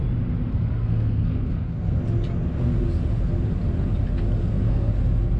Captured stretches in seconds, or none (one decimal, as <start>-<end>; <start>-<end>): 0.0-0.5; 2.0-4.4; 4.9-5.4